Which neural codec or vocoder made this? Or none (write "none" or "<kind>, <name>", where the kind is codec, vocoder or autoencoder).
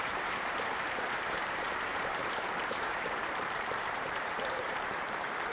vocoder, BigVGAN v2